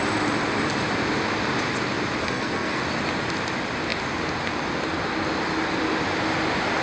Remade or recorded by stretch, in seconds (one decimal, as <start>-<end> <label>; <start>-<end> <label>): 0.0-2.2 recorded; 2.2-2.8 remade; 2.8-6.8 recorded